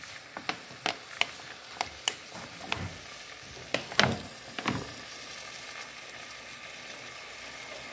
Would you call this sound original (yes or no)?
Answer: yes